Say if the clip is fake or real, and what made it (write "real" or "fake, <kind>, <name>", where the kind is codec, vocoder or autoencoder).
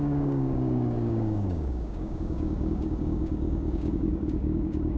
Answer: fake, codec, DAC